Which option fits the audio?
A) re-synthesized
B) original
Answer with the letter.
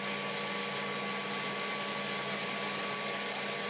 B